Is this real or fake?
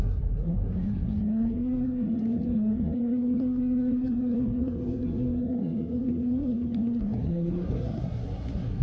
fake